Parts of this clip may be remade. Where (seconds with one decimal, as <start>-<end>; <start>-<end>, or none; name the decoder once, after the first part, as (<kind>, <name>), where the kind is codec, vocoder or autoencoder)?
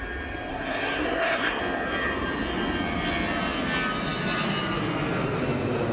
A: 0.5-1.6 (codec, SNAC)